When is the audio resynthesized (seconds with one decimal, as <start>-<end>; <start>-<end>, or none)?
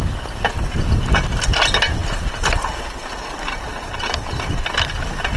none